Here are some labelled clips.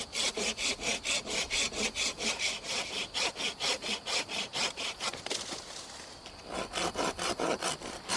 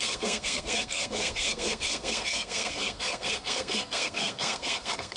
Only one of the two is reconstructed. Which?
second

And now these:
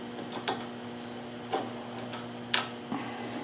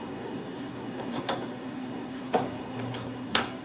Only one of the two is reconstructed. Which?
second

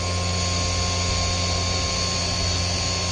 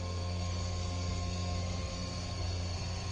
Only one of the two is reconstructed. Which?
second